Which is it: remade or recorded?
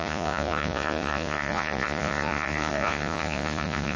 remade